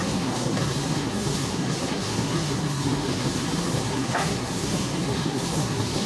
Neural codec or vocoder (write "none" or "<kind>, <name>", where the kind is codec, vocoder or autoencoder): codec, SNAC